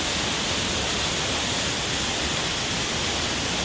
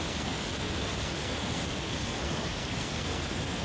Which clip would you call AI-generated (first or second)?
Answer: second